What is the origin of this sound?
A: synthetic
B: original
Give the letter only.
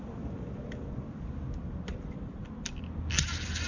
B